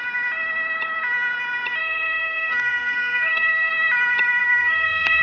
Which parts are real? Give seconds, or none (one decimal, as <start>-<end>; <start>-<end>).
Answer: 0.0-1.8; 3.7-4.4